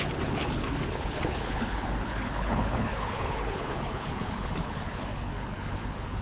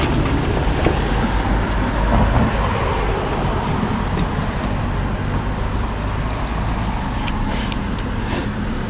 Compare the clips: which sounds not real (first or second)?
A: first